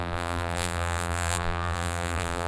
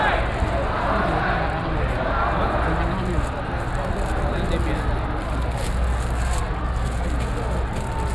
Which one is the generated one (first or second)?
first